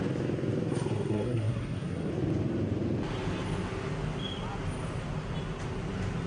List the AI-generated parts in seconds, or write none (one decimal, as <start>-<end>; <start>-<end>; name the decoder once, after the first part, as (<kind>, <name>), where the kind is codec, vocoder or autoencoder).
0.7-2.1 (codec, SNAC)